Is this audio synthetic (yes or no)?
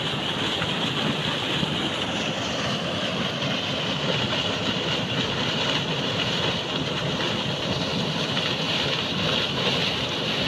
yes